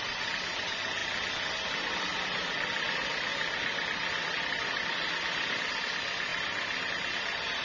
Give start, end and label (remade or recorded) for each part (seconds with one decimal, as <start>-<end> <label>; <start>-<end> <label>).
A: 0.0-7.6 recorded